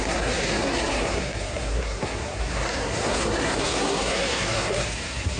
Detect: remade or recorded remade